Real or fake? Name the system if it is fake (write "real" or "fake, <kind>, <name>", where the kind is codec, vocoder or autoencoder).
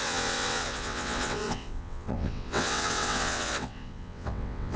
fake, vocoder, WaveNeXt